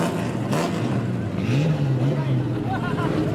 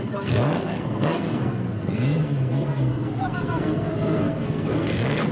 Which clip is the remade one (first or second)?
second